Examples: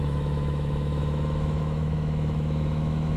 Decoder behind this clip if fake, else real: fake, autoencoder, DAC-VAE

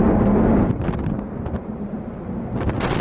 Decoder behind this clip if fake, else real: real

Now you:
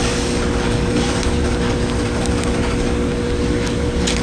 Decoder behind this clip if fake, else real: fake, codec, DAC